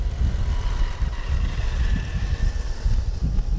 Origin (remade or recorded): recorded